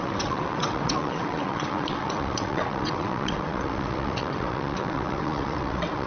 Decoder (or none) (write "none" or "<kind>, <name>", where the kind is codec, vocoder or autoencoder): vocoder, WaveNeXt